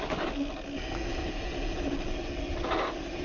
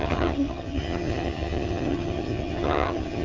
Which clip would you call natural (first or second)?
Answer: first